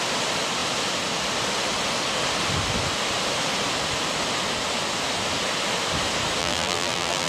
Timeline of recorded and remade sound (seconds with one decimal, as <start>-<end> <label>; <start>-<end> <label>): 0.0-6.4 recorded; 6.4-7.3 remade